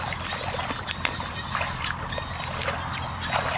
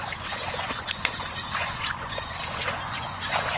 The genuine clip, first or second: first